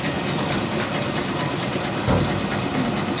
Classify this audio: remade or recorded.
recorded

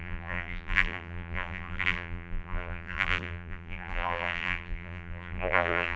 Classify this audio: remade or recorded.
remade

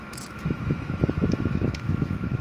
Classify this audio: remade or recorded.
remade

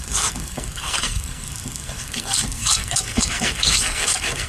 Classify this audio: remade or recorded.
remade